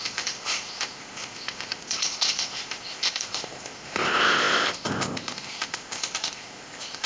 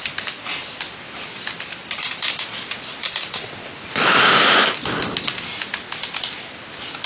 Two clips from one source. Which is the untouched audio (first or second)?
second